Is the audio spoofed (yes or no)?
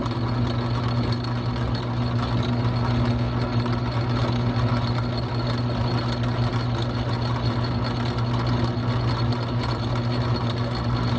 no